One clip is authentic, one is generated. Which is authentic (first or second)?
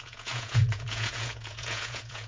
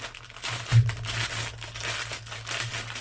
second